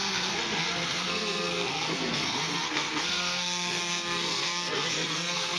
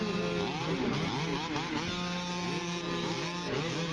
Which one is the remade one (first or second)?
first